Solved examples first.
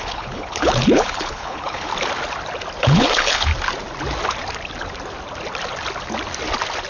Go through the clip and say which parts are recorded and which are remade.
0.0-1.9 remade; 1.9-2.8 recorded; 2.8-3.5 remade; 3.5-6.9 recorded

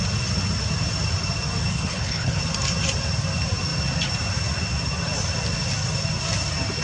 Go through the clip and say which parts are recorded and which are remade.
0.0-1.7 recorded; 1.7-2.4 remade; 2.4-6.8 recorded

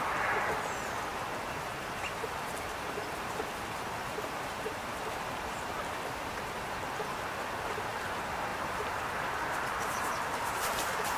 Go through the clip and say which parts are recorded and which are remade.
0.0-1.1 recorded; 1.1-5.5 remade; 5.5-8.5 recorded; 8.5-11.2 remade

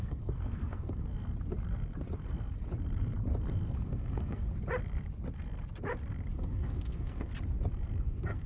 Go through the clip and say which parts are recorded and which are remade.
0.0-1.1 remade; 1.1-3.8 recorded; 3.8-4.5 remade; 4.5-6.3 recorded; 6.3-7.3 remade; 7.3-8.0 recorded; 8.0-8.5 remade

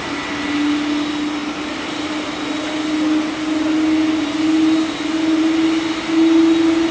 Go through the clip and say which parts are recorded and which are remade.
0.0-6.9 recorded

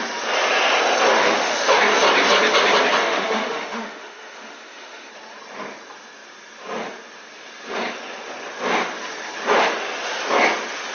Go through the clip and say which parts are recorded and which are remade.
0.0-1.2 recorded; 1.2-1.8 remade; 1.8-3.0 recorded; 3.0-5.1 remade; 5.1-10.9 recorded

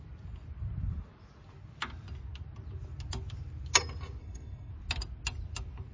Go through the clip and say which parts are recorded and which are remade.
0.0-4.2 recorded; 4.2-4.7 remade; 4.7-5.9 recorded